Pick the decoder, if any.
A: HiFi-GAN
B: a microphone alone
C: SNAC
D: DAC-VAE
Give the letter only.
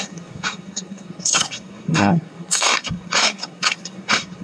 C